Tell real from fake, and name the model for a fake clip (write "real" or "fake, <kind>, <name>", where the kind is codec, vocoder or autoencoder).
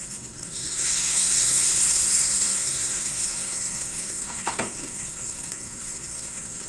fake, codec, SNAC